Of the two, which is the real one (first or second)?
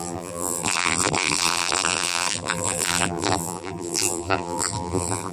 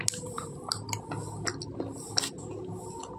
second